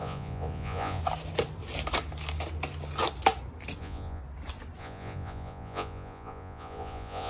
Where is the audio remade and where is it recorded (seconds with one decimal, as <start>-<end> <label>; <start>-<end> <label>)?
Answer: 0.0-1.0 remade; 1.0-3.8 recorded; 3.8-4.2 remade; 4.2-4.8 recorded; 4.8-7.3 remade